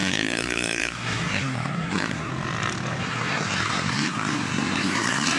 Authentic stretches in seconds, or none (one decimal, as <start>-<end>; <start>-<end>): 2.3-3.0